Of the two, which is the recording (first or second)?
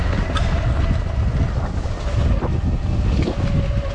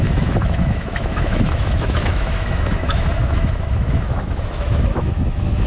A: first